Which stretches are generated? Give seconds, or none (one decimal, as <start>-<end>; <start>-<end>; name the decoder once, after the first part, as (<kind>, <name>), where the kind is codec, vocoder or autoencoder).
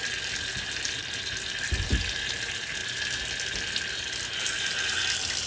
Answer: none